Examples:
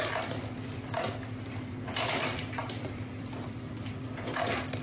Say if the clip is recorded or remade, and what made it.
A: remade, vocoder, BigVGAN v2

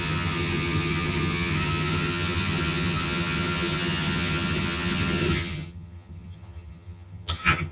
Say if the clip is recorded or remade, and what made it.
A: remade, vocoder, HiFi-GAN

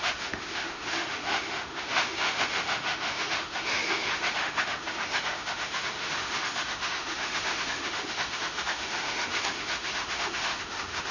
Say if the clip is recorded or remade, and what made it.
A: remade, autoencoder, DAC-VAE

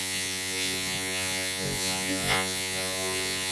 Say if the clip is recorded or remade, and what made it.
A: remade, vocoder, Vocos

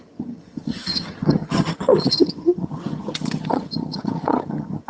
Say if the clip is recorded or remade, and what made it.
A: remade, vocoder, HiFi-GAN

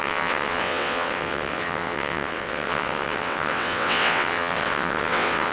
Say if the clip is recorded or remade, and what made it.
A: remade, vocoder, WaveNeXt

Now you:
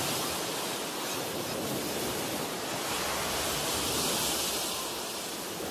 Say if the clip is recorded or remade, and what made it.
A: recorded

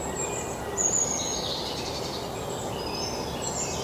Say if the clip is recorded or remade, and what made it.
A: recorded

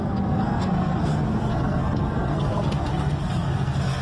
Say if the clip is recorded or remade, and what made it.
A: remade, codec, SNAC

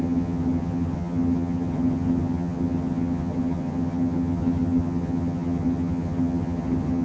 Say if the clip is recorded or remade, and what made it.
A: remade, vocoder, HiFi-GAN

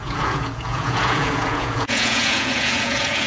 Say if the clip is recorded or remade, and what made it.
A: remade, vocoder, Vocos